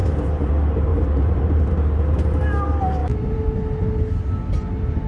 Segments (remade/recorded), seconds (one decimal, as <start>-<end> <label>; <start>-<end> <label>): 0.0-0.5 remade; 0.5-0.9 recorded; 0.9-1.6 remade; 1.6-3.0 recorded; 3.0-3.6 remade; 3.6-5.1 recorded